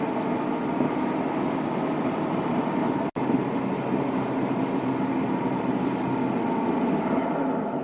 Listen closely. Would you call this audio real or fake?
real